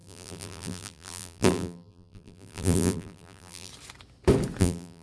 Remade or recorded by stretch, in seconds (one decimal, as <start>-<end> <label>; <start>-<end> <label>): 0.0-3.7 remade; 3.7-4.6 recorded; 4.6-5.0 remade